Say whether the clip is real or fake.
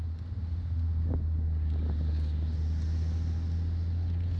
real